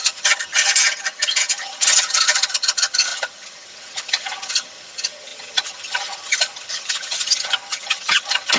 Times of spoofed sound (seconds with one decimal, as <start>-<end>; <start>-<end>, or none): 0.0-8.6

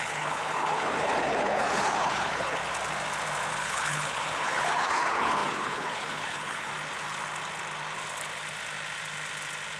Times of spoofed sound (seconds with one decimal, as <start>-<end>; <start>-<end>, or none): 0.0-2.6; 3.5-6.7

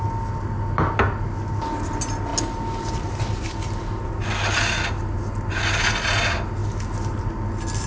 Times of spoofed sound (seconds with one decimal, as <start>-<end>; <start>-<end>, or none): none

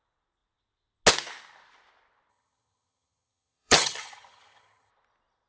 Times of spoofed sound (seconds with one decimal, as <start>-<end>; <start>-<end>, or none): 2.3-4.9

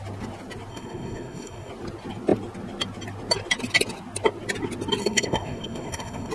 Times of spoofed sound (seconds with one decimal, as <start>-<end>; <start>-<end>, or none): 0.7-1.7; 5.0-6.3